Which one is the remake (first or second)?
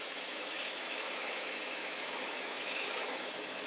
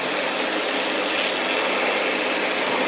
first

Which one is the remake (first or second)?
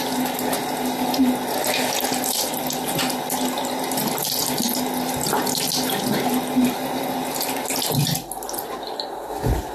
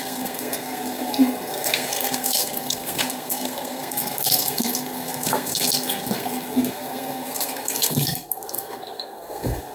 second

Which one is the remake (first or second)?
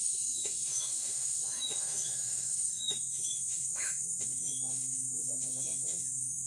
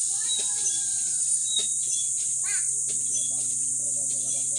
first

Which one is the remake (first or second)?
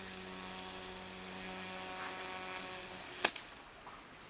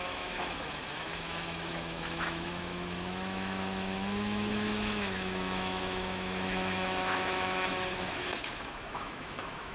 second